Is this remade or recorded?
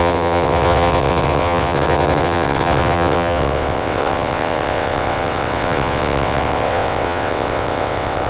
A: remade